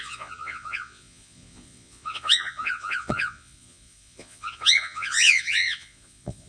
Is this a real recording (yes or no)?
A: no